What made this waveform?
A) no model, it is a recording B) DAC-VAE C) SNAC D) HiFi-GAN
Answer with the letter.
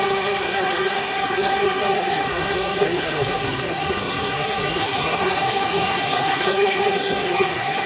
C